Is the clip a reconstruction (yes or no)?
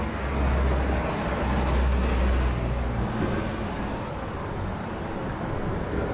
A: no